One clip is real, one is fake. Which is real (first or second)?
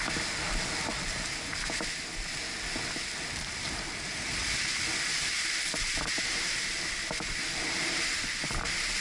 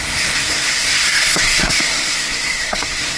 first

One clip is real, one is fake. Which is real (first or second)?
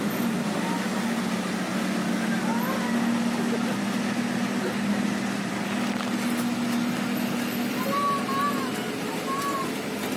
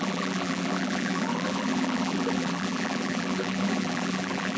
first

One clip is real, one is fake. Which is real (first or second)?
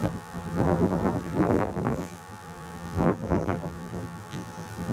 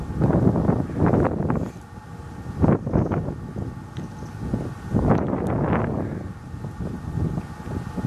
second